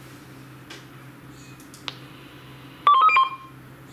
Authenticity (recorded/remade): recorded